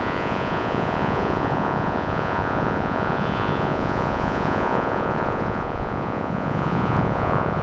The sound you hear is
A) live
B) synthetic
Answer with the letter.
B